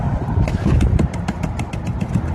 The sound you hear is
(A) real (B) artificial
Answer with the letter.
A